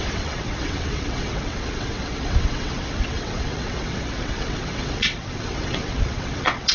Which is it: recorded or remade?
remade